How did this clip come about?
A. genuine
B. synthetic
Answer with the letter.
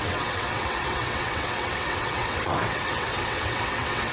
B